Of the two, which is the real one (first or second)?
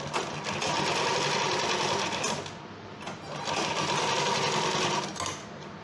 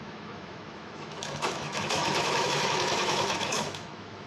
first